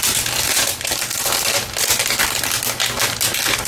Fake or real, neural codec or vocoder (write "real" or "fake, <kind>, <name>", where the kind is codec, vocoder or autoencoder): real